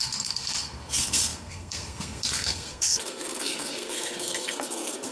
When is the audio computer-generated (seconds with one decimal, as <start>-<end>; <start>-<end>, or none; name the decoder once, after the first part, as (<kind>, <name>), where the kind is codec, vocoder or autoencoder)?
0.0-5.1 (codec, SNAC)